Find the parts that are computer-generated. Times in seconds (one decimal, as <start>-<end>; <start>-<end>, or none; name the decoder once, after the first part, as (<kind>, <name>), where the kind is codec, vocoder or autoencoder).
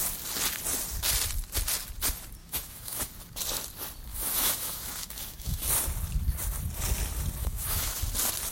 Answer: 2.4-3.1 (autoencoder, DAC-VAE); 4.1-5.7; 7.4-8.0